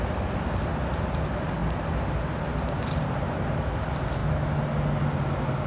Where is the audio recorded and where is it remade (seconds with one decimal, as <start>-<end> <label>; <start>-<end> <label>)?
0.0-5.7 recorded